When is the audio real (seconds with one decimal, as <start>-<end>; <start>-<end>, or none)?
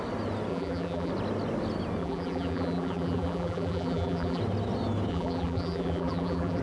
0.0-0.5; 1.1-2.0; 4.4-5.1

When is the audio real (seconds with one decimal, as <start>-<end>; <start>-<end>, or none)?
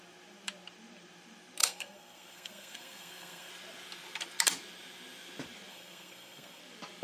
0.0-1.6; 3.5-5.7; 6.6-7.0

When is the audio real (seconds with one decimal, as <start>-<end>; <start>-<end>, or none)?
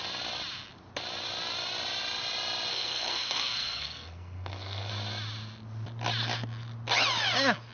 0.0-2.7; 4.9-7.7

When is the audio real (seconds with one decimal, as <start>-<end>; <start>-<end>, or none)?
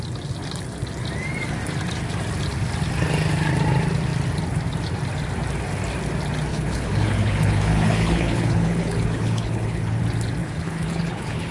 0.0-6.5; 10.0-10.4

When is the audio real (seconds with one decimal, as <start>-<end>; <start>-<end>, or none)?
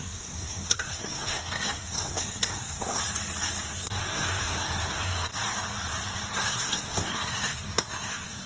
3.0-3.7; 5.3-6.3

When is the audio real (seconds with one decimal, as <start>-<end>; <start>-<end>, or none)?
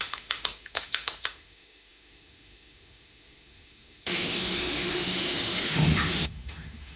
none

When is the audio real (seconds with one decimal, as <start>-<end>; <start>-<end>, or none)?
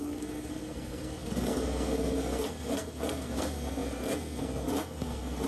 none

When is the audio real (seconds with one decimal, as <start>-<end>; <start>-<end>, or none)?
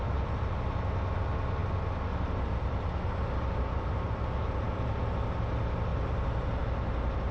0.0-7.3